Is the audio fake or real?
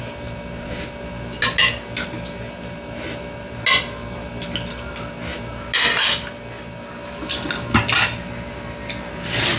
real